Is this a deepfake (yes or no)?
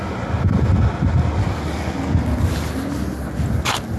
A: no